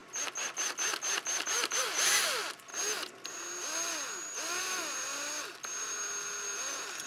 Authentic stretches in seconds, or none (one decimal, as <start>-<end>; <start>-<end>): 0.0-7.1